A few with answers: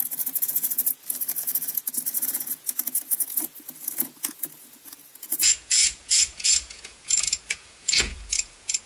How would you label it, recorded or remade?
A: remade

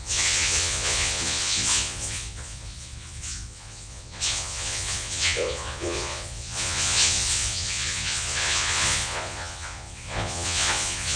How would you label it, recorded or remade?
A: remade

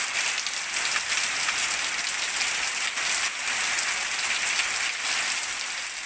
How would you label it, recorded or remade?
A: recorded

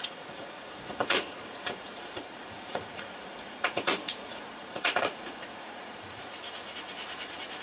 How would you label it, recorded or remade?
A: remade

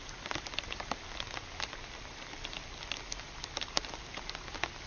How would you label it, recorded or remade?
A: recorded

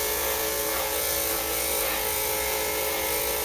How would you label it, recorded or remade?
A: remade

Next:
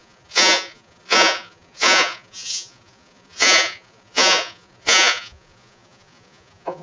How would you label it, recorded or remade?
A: remade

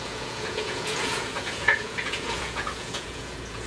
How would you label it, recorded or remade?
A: remade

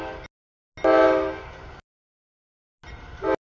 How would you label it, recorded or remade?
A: recorded